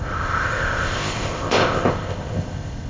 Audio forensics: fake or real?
fake